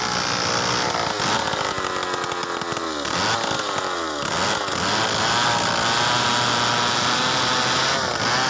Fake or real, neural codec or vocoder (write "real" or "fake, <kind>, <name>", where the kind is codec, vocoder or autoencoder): real